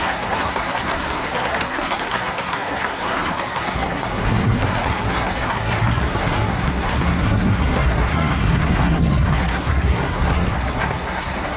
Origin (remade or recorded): remade